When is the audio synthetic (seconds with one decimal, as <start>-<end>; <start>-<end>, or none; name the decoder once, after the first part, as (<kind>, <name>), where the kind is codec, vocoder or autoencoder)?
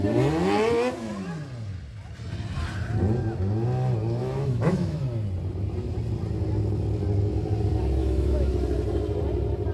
4.2-5.0 (autoencoder, DAC-VAE); 8.0-8.5